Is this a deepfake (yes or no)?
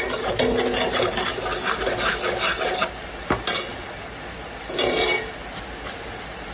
no